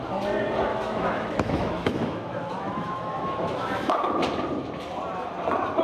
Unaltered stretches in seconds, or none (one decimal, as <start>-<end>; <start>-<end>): 0.0-0.7; 4.2-5.8